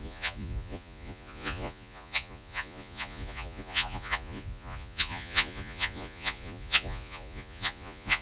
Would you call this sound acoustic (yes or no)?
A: no